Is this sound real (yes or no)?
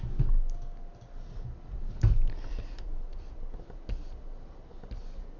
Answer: yes